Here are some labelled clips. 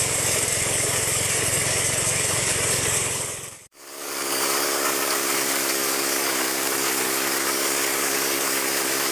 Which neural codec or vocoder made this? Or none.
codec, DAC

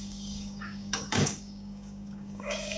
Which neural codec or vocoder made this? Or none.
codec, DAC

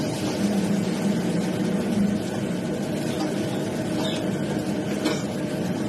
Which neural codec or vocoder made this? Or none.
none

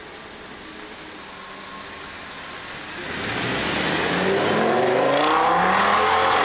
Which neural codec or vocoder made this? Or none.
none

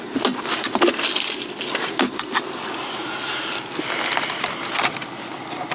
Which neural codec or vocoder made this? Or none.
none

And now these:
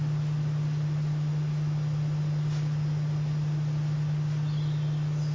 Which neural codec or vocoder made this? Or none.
none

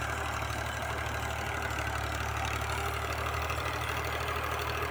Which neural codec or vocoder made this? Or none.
none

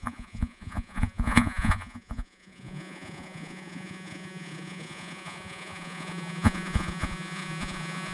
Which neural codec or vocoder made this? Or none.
vocoder, Vocos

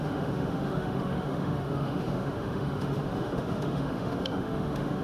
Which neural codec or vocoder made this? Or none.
autoencoder, DAC-VAE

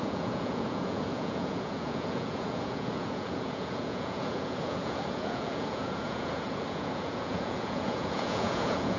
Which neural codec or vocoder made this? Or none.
vocoder, Vocos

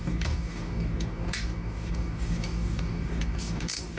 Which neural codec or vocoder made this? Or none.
codec, DAC